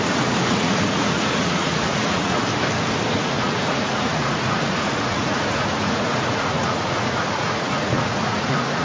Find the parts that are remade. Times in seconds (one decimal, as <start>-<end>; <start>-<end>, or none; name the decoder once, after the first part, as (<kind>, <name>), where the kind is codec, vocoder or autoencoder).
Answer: 0.0-2.4 (vocoder, Vocos); 3.1-8.8